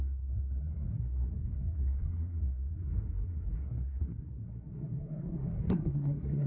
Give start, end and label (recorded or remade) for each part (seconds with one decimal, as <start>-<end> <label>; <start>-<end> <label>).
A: 0.0-6.5 remade